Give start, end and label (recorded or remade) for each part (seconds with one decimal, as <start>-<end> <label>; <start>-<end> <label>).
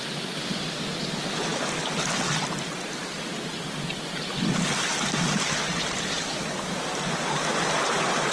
0.0-5.7 recorded; 5.7-7.5 remade; 7.5-8.3 recorded